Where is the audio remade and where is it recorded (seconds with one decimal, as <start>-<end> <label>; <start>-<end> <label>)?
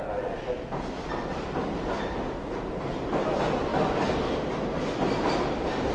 0.0-5.9 recorded